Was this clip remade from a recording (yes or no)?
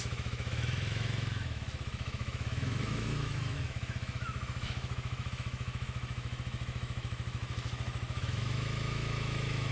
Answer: yes